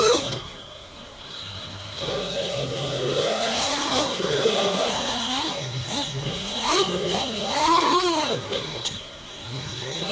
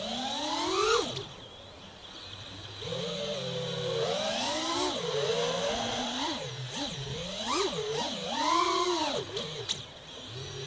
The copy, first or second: first